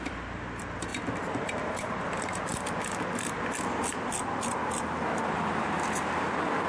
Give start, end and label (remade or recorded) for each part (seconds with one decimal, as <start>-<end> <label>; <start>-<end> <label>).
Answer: 0.0-2.5 remade; 2.5-3.9 recorded; 3.9-4.6 remade; 4.6-5.3 recorded; 5.3-6.7 remade

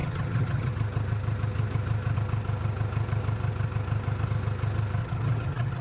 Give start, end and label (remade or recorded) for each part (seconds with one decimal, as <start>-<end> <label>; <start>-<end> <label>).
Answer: 0.0-0.7 remade; 0.7-5.0 recorded; 5.0-5.8 remade

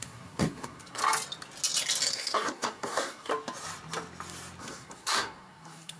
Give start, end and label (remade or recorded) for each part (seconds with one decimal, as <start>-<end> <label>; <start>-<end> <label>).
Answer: 0.0-1.0 remade; 1.0-2.1 recorded; 2.1-3.3 remade; 3.3-4.6 recorded; 4.6-6.0 remade

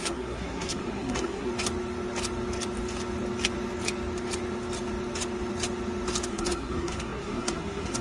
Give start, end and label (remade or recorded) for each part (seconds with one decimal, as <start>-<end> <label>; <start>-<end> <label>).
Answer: 0.0-1.5 remade; 1.5-6.3 recorded; 6.3-8.0 remade

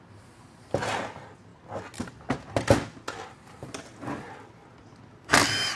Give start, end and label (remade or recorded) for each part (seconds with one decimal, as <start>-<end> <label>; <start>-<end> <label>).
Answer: 0.0-5.8 recorded

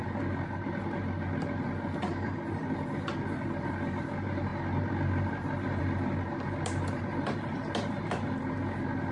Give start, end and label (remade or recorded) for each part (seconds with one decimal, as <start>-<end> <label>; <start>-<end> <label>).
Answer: 0.0-9.1 recorded

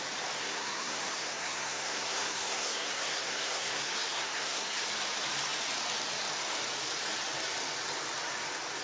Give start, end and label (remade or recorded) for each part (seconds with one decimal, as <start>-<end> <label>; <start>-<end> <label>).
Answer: 0.0-0.4 recorded; 0.4-4.8 remade; 4.8-8.8 recorded